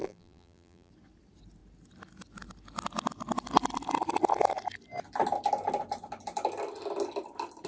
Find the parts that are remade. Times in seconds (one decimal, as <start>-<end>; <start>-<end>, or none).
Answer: 0.0-0.9